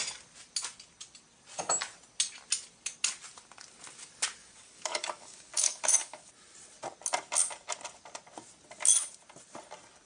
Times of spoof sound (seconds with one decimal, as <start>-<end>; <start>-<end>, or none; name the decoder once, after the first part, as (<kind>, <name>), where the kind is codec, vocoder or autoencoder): 4.4-6.3 (codec, DAC)